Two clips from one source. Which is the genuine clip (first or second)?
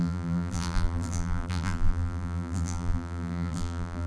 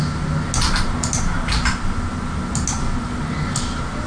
second